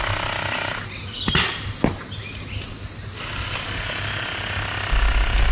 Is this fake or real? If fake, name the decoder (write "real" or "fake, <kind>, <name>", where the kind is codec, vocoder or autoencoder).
real